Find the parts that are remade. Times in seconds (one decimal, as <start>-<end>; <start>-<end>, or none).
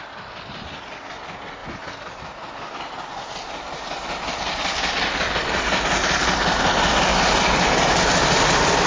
none